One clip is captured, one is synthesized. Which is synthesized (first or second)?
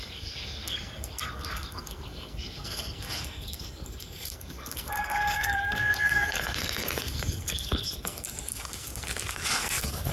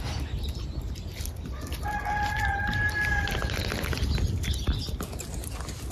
first